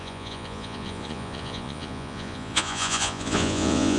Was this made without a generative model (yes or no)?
no